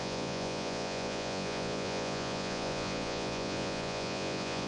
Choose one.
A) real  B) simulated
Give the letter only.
B